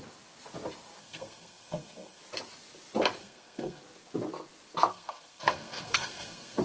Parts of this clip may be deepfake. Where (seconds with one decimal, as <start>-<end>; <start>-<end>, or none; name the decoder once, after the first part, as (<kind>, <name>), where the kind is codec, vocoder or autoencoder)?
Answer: 1.0-2.2 (codec, SNAC); 3.2-3.8; 4.9-6.6